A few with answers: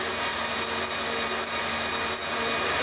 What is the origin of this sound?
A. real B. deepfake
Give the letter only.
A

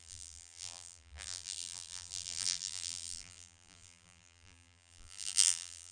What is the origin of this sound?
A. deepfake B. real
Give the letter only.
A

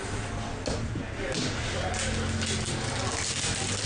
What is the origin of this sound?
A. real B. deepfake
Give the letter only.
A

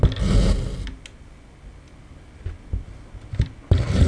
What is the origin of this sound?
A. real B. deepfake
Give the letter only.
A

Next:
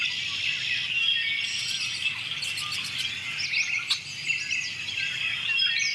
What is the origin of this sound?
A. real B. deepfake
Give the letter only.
A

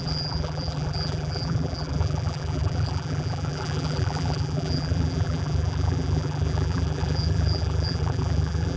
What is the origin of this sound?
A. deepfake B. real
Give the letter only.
A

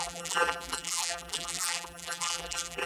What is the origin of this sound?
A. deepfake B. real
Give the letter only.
A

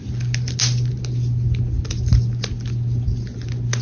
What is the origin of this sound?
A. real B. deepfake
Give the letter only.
A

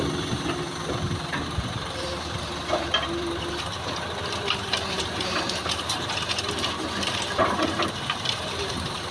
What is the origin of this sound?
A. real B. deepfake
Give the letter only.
B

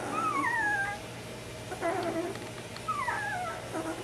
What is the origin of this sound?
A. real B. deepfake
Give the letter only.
A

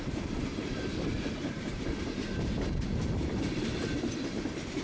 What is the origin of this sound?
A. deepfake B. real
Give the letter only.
A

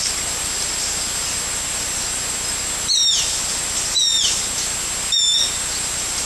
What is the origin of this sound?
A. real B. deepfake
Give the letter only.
A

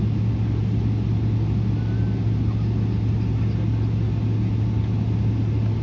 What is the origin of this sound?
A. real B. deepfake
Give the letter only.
A